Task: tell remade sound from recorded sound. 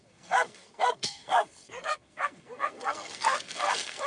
remade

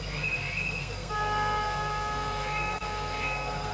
remade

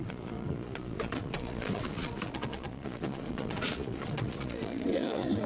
remade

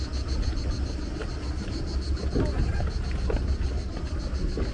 recorded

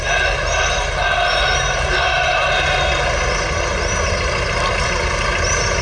recorded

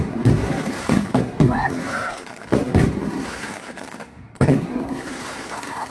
remade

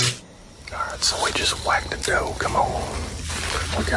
recorded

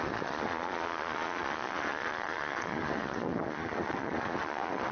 remade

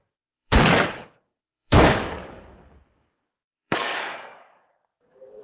remade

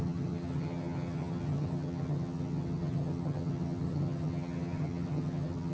remade